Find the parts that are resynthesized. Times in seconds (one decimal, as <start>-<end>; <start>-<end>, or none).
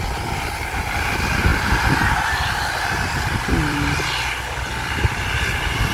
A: 1.5-4.3